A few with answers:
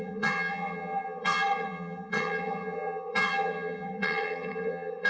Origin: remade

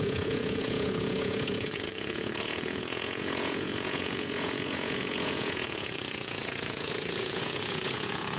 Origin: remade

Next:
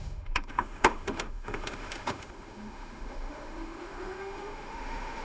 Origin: remade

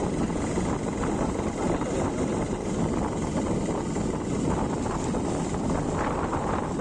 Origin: recorded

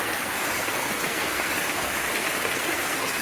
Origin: remade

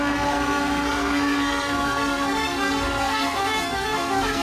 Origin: remade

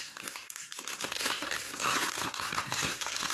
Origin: remade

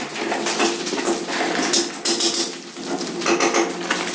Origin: recorded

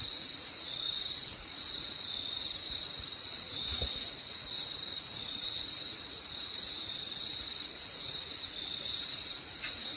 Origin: remade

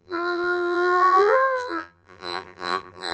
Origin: remade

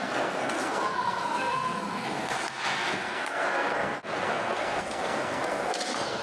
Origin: remade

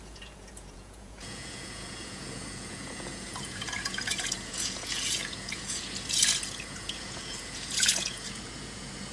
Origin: remade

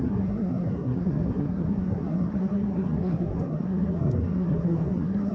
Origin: remade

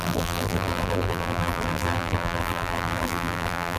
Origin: remade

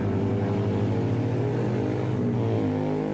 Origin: recorded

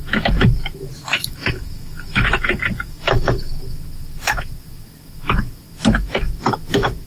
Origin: remade